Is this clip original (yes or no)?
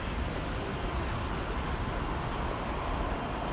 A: yes